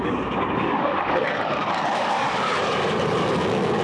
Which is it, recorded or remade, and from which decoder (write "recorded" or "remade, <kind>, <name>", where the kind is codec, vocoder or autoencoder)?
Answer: remade, codec, DAC